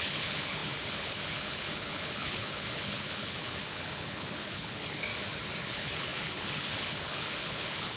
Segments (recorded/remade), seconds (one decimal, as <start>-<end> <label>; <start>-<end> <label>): 0.0-5.1 remade; 5.1-5.6 recorded; 5.6-8.0 remade